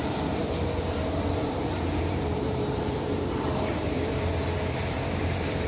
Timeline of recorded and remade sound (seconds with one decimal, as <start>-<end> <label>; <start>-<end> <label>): 0.0-0.4 remade; 0.4-1.3 recorded; 1.3-4.4 remade; 4.4-5.2 recorded; 5.2-5.7 remade